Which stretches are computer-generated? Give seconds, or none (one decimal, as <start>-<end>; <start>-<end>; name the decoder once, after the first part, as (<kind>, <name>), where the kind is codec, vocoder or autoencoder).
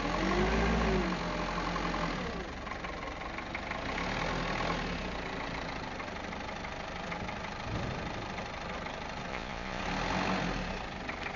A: 9.3-9.8 (vocoder, Vocos)